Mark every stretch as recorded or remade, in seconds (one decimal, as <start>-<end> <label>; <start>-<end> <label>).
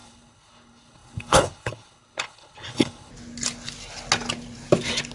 0.0-3.1 remade; 3.1-5.1 recorded